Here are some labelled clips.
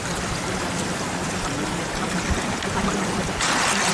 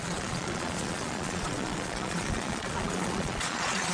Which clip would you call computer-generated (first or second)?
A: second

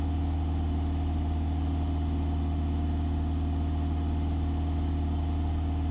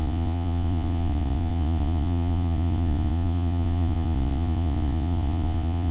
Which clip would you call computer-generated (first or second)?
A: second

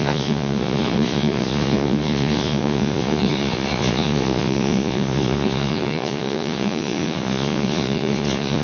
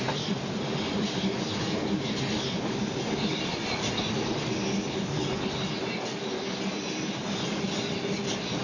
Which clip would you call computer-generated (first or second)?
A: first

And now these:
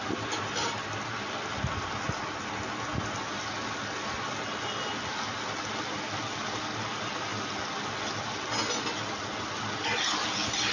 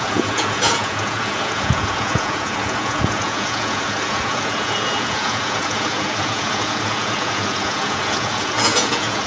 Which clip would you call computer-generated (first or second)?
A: second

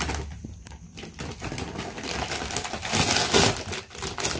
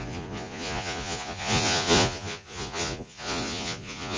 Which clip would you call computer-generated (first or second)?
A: second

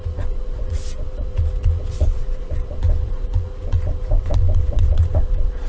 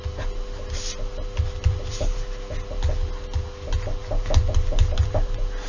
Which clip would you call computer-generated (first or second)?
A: first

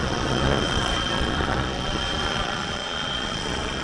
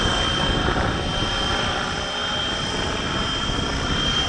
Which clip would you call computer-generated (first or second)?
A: first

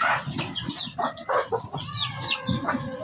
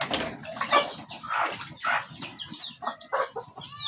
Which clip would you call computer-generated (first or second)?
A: first